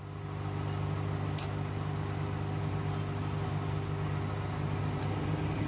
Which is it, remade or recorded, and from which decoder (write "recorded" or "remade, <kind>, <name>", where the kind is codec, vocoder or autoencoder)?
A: recorded